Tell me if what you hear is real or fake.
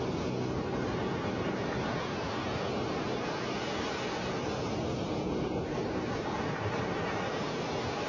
real